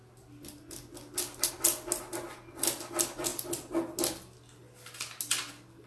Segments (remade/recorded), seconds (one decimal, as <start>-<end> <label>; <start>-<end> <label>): 0.0-5.9 recorded